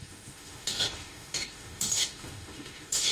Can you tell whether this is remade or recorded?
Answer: remade